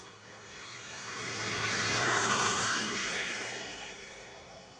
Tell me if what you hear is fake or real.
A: fake